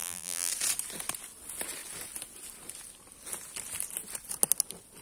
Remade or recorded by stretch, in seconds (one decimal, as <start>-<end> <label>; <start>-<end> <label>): 0.0-0.5 remade; 0.5-5.0 recorded